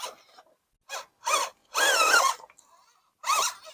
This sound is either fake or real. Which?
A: real